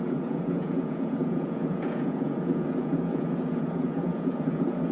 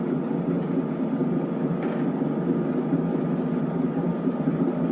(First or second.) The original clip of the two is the second